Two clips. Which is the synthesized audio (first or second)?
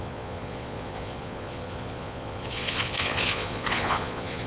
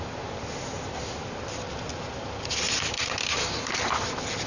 first